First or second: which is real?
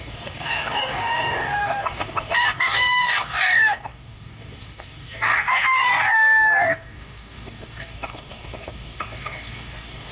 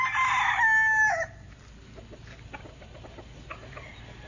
second